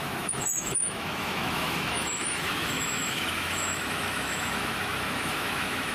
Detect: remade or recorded remade